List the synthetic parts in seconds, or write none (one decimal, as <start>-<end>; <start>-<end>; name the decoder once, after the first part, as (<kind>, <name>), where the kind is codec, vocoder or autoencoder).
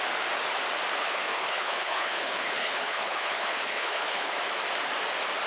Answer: 1.0-4.3 (codec, HILCodec)